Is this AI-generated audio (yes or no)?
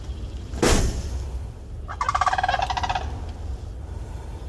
no